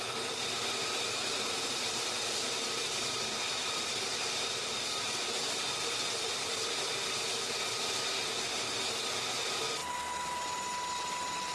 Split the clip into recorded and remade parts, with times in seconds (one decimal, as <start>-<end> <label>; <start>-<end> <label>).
0.0-3.6 recorded; 3.6-5.4 remade; 5.4-11.5 recorded